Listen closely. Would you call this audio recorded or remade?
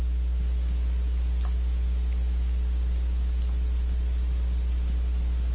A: recorded